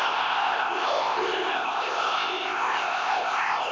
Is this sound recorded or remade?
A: remade